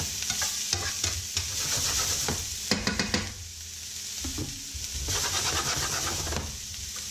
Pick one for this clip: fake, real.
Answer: real